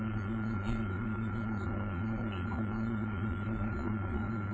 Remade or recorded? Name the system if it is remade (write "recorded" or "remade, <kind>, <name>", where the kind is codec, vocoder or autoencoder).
remade, vocoder, Vocos